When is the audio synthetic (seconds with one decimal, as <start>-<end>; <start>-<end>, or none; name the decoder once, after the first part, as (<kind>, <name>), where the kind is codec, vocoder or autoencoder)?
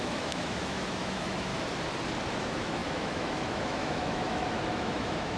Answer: 0.0-1.5 (autoencoder, DAC-VAE); 2.3-5.4